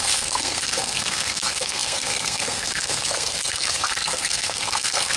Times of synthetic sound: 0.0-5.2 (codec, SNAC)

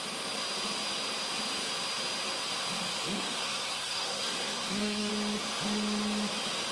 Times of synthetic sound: 3.1-5.1 (codec, SNAC)

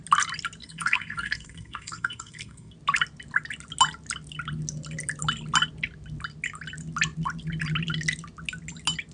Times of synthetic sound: 0.6-2.7 (codec, SNAC)